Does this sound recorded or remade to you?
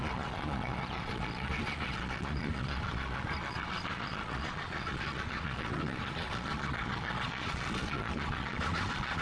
remade